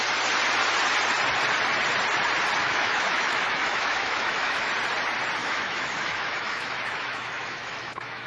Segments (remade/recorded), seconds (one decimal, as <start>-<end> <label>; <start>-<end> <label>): 0.0-2.6 recorded; 2.6-4.7 remade; 4.7-5.4 recorded; 5.4-8.3 remade